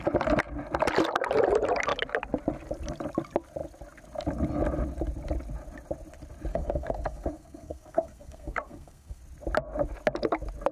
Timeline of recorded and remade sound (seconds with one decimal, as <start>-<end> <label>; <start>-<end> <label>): 0.0-6.5 recorded; 6.5-9.2 remade; 9.2-10.7 recorded